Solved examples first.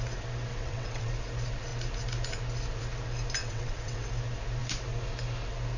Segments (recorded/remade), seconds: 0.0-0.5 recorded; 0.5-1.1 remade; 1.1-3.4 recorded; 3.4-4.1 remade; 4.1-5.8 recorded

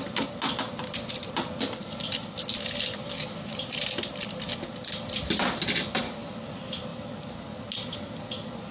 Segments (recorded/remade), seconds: 0.0-8.7 recorded

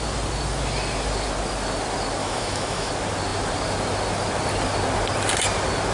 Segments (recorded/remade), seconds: 0.0-2.2 recorded; 2.2-2.9 remade; 2.9-5.9 recorded

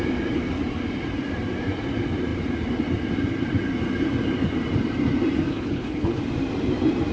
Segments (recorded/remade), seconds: 0.0-5.5 recorded; 5.5-6.2 remade; 6.2-7.1 recorded